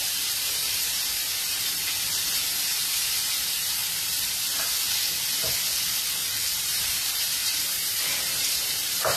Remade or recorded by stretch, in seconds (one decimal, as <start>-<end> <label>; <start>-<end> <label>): 0.0-3.8 remade; 3.8-6.5 recorded; 6.5-9.2 remade